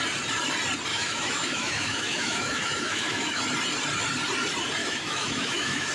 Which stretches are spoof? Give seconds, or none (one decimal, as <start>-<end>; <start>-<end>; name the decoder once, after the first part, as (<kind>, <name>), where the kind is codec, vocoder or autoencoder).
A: 0.9-3.4 (autoencoder, DAC-VAE); 4.8-5.9